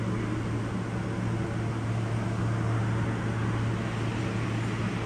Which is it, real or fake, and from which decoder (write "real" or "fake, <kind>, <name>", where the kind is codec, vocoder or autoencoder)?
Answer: real